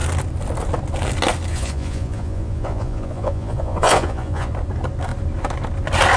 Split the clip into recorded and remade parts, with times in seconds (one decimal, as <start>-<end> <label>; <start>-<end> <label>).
0.0-1.5 recorded; 1.5-4.5 remade; 4.5-6.2 recorded